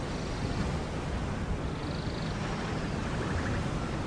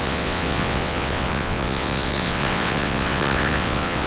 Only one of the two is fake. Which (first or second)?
second